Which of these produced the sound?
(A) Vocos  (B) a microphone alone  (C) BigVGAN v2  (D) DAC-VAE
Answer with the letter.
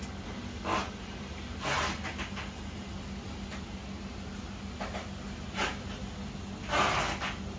B